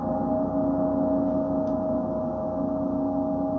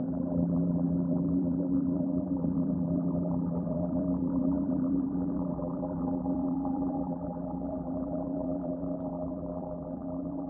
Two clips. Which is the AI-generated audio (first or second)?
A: second